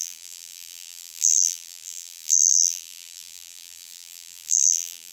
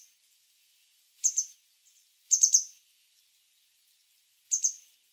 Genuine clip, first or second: second